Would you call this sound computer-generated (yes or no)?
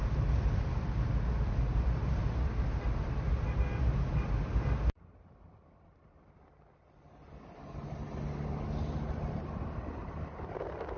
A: no